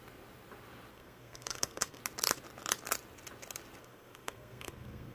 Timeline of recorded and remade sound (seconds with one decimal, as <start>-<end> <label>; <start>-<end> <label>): 0.0-0.9 recorded; 0.9-2.0 remade; 2.0-3.8 recorded; 3.8-5.1 remade